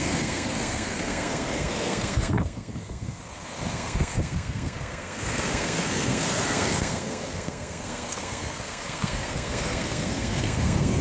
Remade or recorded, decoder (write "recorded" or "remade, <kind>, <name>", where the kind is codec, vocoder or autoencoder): remade, codec, SNAC